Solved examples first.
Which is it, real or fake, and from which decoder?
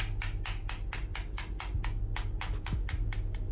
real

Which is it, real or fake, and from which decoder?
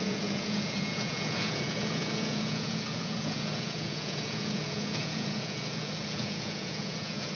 fake, vocoder, Vocos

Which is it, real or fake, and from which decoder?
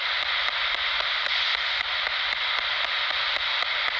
real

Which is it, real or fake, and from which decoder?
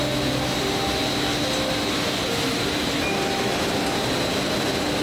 real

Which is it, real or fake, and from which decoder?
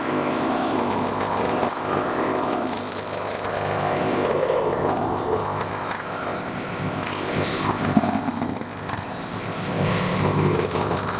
fake, codec, ZipCodec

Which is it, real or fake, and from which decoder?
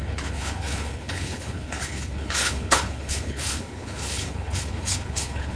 fake, codec, HILCodec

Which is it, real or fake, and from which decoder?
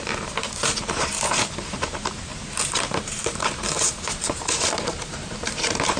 fake, vocoder, BigVGAN v2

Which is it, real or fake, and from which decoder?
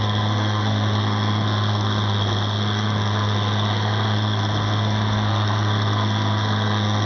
fake, codec, SNAC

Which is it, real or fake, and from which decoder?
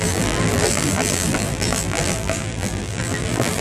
fake, vocoder, BigVGAN v2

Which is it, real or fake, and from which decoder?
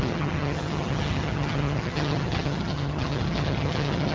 fake, vocoder, HiFi-GAN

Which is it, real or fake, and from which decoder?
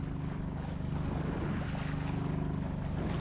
real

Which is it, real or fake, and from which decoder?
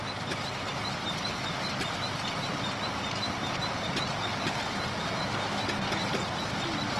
real